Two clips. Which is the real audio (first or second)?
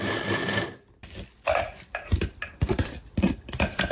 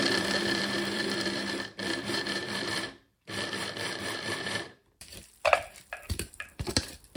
first